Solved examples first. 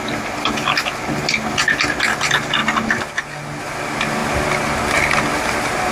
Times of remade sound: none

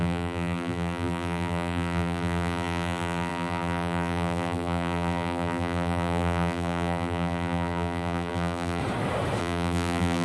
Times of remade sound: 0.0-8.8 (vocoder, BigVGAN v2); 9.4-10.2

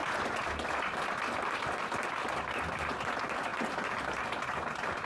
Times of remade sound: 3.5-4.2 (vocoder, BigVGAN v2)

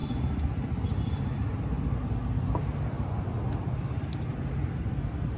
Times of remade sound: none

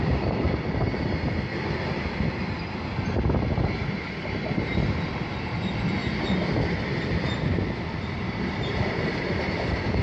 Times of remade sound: 0.0-0.9 (vocoder, BigVGAN v2); 3.5-6.0; 7.1-10.0

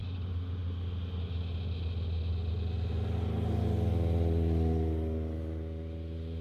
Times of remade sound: none